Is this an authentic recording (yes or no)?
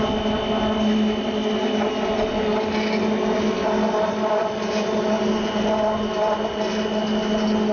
yes